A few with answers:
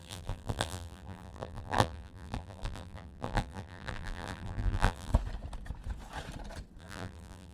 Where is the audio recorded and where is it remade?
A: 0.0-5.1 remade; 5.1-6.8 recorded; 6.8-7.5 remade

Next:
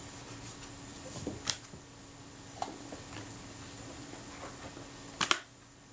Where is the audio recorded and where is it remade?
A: 0.0-5.9 recorded

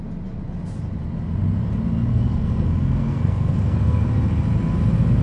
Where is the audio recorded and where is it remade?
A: 0.0-2.1 recorded; 2.1-4.1 remade; 4.1-5.2 recorded

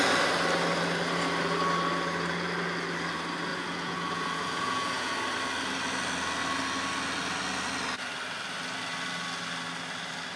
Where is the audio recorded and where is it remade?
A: 0.0-3.5 recorded; 3.5-5.1 remade; 5.1-10.4 recorded

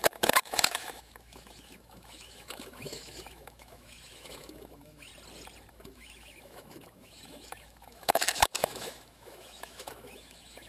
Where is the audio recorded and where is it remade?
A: 0.0-5.1 remade; 5.1-5.7 recorded; 5.7-10.7 remade

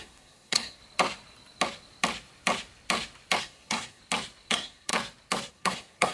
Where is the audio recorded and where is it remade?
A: 0.0-0.8 remade; 0.8-3.4 recorded; 3.4-4.0 remade; 4.0-4.5 recorded; 4.5-4.9 remade; 4.9-5.5 recorded; 5.5-6.1 remade

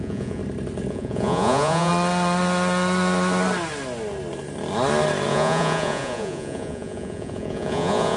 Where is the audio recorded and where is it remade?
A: 0.0-0.4 remade; 0.4-0.9 recorded; 0.9-1.9 remade; 1.9-5.3 recorded; 5.3-8.2 remade